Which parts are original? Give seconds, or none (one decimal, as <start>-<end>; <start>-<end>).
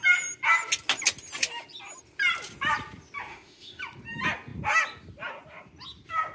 0.0-3.3; 3.8-6.3